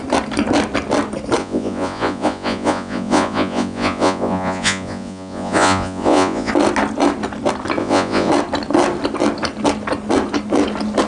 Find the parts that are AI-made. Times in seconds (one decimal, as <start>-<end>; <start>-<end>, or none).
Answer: 1.4-6.5; 7.8-8.3